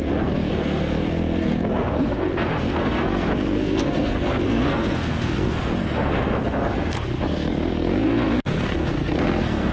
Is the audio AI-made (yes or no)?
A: yes